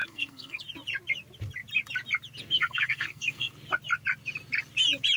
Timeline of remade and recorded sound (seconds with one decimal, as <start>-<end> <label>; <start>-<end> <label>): 0.0-0.6 remade; 0.6-2.6 recorded; 2.6-3.5 remade; 3.5-5.2 recorded